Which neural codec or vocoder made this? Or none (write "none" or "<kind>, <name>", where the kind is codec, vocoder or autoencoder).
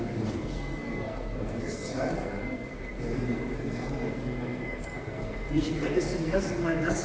codec, SNAC